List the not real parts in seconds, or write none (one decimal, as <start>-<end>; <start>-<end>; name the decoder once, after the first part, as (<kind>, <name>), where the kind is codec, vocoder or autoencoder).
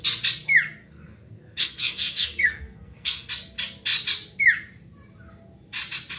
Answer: 0.8-3.3 (codec, SNAC)